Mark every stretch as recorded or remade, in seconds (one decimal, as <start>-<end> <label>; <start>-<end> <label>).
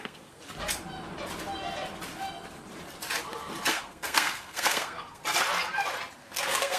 0.0-0.4 remade; 0.4-3.7 recorded; 3.7-5.2 remade; 5.2-6.2 recorded; 6.2-6.8 remade